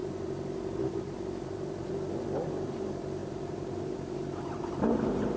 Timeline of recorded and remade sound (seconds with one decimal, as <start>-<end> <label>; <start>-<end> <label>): 0.0-1.9 remade; 1.9-3.2 recorded; 3.2-3.7 remade; 3.7-5.4 recorded